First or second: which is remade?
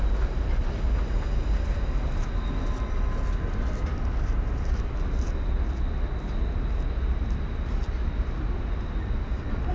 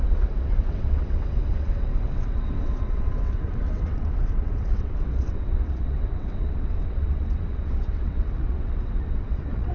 second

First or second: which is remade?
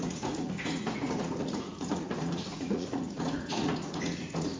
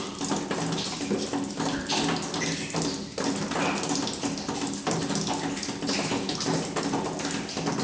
first